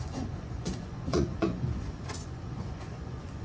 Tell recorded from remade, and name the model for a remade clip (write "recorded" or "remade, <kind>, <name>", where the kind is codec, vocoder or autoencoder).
remade, vocoder, Vocos